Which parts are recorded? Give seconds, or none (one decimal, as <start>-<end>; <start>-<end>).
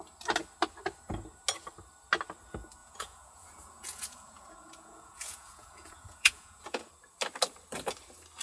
0.0-2.8; 6.9-8.4